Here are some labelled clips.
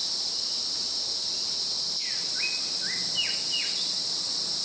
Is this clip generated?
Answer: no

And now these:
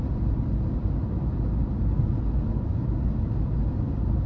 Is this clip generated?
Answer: no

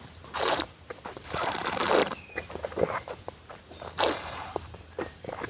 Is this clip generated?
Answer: yes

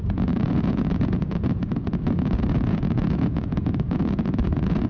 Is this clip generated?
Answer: yes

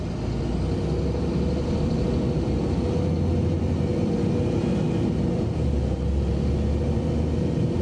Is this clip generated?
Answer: no